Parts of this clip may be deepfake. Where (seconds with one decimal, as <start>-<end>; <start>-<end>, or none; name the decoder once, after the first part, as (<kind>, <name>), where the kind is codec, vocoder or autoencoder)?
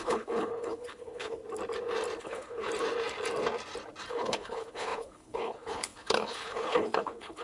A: 0.0-1.4 (codec, HILCodec); 2.2-2.7; 4.1-7.4